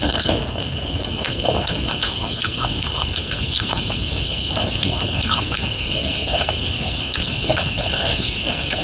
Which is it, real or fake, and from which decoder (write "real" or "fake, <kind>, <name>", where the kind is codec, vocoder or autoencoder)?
fake, codec, SNAC